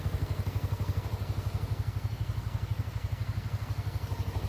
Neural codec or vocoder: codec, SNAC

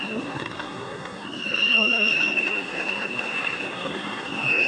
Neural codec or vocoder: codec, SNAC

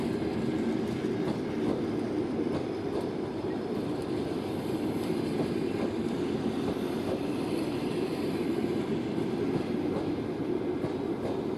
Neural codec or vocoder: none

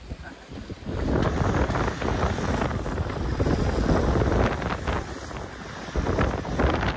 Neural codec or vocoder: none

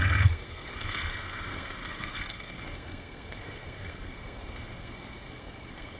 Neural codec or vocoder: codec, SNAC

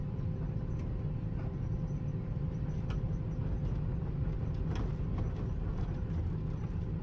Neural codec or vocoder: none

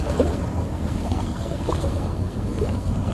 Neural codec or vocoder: codec, SNAC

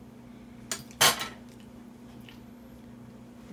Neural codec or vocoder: none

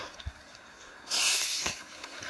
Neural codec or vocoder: codec, SNAC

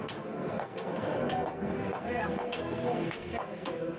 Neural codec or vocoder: codec, SNAC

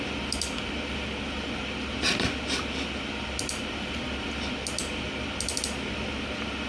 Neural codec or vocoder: none